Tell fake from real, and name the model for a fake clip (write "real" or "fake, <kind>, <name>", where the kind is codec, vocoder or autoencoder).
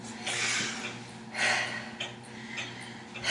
real